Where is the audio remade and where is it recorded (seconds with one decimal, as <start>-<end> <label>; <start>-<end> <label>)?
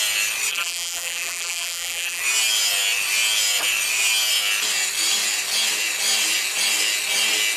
0.0-0.5 recorded; 0.5-2.2 remade; 2.2-7.6 recorded